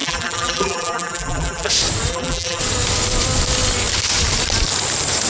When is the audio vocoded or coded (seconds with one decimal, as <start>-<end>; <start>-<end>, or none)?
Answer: 0.0-1.7; 2.1-2.6